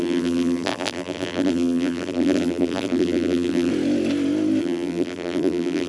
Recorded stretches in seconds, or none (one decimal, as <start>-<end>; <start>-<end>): 3.7-4.6